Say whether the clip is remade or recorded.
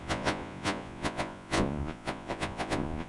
remade